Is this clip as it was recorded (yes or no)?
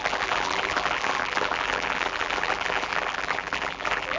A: no